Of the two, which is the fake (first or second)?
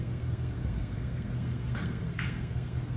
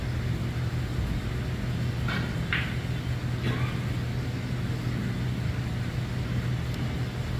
first